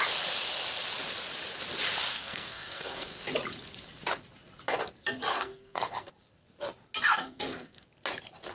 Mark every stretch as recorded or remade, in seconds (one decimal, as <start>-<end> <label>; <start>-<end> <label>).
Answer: 0.0-2.1 recorded; 2.1-3.2 remade; 3.2-5.3 recorded; 5.3-6.1 remade; 6.1-7.1 recorded; 7.1-7.9 remade; 7.9-8.5 recorded